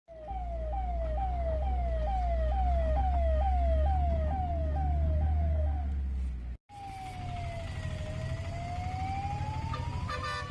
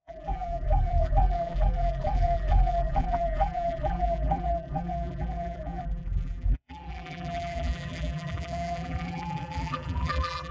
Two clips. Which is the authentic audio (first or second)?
first